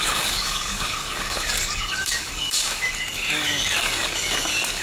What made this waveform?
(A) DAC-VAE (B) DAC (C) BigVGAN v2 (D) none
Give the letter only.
B